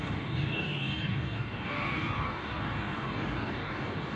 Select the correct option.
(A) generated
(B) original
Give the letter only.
A